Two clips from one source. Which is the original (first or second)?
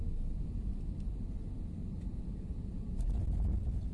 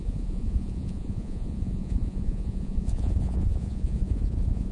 first